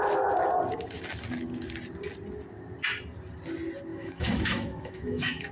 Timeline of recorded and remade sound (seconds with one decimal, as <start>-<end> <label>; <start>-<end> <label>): 0.0-3.9 recorded; 3.9-5.5 remade